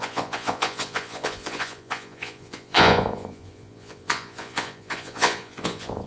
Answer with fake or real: fake